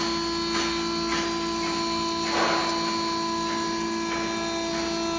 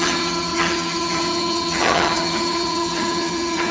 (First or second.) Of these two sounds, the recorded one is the first